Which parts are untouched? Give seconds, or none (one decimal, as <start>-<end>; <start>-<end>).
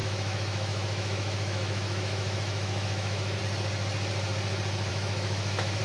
3.4-4.9